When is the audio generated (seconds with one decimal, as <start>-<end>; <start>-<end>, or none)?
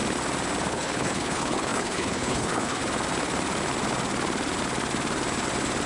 0.7-2.8